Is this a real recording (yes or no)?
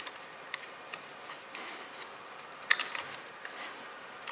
yes